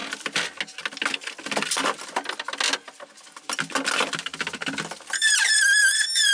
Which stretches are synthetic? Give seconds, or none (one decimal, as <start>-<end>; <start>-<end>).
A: none